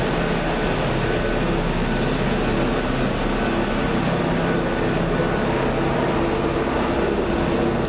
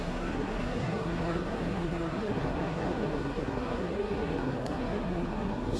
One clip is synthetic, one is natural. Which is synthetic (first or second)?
second